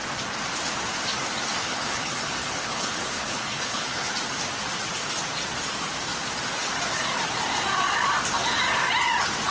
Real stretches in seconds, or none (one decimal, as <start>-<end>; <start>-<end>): 0.0-1.6; 4.1-9.5